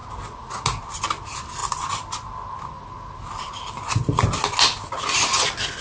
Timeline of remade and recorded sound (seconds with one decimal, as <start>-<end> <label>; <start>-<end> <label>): 0.0-5.8 recorded